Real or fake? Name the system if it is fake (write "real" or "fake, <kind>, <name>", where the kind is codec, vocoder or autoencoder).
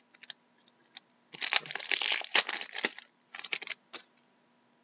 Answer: real